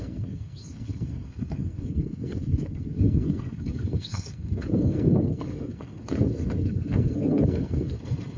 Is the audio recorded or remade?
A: remade